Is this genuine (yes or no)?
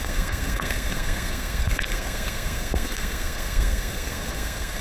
no